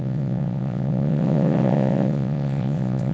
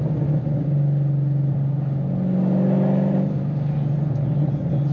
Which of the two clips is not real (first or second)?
first